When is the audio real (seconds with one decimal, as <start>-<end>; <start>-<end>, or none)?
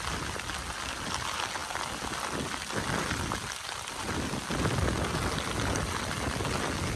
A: 0.0-7.0